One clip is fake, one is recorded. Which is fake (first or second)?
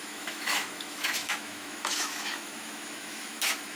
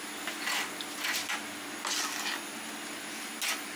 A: first